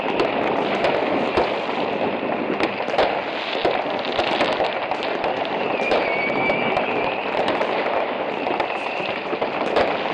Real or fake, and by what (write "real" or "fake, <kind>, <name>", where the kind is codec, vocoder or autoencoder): real